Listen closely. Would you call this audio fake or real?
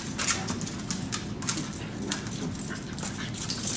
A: real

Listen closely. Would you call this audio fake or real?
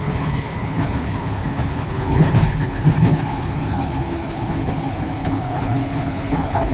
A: fake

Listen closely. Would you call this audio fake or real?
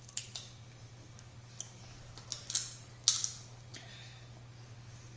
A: real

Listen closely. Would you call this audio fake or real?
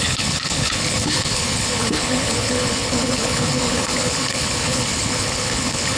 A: fake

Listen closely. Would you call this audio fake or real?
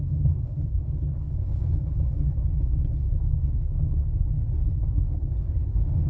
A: fake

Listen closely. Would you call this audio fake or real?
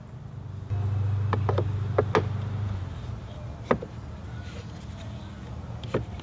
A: real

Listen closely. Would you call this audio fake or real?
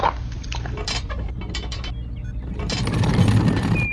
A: real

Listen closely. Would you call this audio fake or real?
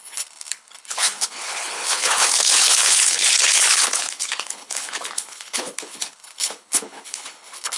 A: fake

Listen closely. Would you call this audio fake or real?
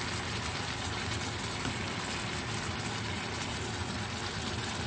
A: real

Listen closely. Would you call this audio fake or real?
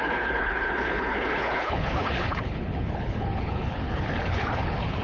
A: fake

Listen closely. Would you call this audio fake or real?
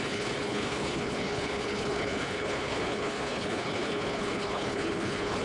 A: fake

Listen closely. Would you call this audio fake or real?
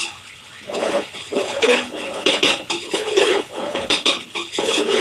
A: fake